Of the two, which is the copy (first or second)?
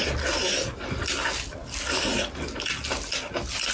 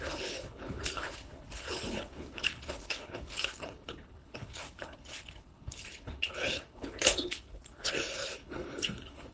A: second